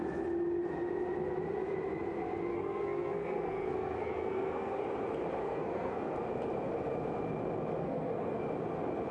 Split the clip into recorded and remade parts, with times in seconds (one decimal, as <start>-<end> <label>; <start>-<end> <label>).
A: 0.0-2.5 recorded; 2.5-4.8 remade; 4.8-5.4 recorded; 5.4-6.1 remade; 6.1-7.8 recorded; 7.8-8.4 remade; 8.4-9.1 recorded